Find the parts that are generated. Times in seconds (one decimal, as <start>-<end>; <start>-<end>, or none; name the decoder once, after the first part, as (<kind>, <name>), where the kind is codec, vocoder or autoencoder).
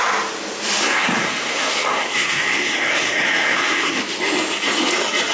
0.8-4.0 (codec, SNAC)